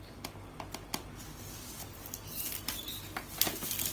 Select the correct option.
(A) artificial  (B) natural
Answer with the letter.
B